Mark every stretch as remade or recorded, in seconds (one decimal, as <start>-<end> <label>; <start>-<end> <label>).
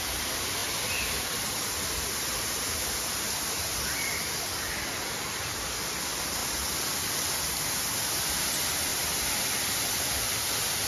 0.0-0.6 recorded; 0.6-1.6 remade; 1.6-8.9 recorded; 8.9-10.9 remade